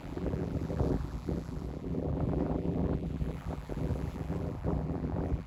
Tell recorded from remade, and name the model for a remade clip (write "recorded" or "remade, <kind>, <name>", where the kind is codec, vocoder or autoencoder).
remade, vocoder, BigVGAN v2